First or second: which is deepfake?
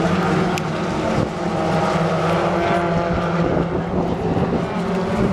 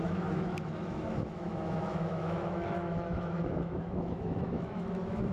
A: second